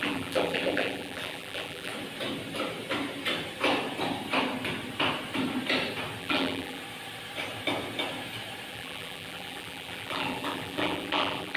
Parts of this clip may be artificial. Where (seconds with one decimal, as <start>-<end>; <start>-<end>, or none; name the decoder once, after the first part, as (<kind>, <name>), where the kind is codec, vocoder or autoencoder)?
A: 0.0-1.9 (vocoder, BigVGAN v2); 6.2-6.8; 8.7-11.6